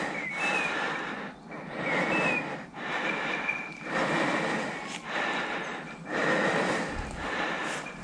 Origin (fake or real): real